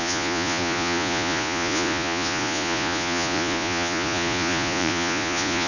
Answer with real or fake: fake